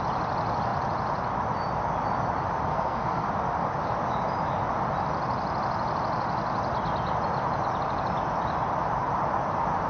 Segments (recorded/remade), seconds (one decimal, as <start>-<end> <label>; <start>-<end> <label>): 0.0-2.7 recorded; 2.7-3.3 remade; 3.3-9.9 recorded